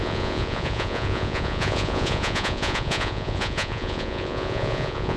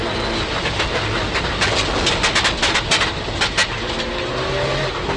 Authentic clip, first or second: second